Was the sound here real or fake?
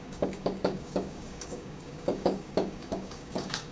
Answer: fake